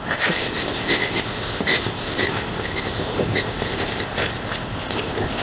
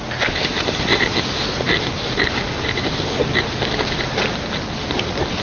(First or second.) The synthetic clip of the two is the first